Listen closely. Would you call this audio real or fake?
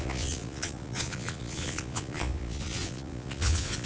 fake